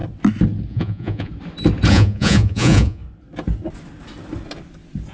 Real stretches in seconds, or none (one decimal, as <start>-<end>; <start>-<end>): 0.0-0.7; 1.3-1.9; 3.0-5.1